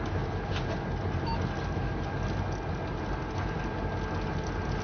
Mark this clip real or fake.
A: real